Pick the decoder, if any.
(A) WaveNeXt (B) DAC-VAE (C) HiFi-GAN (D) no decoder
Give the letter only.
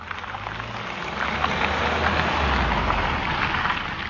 D